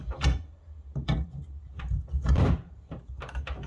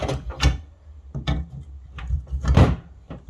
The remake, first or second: first